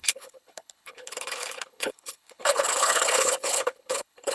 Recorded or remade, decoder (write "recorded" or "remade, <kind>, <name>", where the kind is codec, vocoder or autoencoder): remade, codec, HILCodec